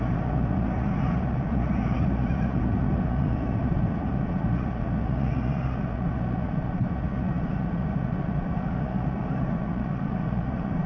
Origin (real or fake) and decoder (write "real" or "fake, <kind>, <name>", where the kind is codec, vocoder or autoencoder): fake, vocoder, Vocos